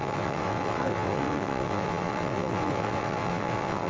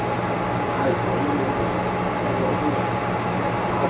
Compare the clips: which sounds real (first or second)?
second